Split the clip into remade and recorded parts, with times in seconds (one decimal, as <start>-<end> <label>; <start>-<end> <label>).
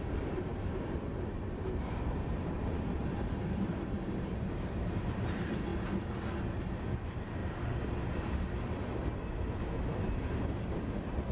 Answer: 0.0-5.7 remade; 5.7-7.0 recorded; 7.0-7.4 remade; 7.4-10.0 recorded; 10.0-11.3 remade